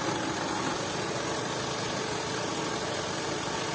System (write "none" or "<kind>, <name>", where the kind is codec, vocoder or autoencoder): none